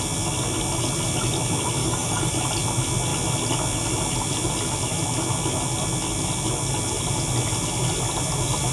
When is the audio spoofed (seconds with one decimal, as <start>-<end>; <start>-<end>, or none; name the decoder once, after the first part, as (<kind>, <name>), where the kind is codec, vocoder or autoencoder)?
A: 1.8-2.3 (codec, DAC)